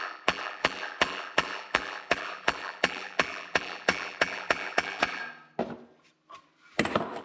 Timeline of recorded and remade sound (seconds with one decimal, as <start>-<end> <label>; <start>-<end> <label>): 0.0-5.2 remade; 5.2-7.2 recorded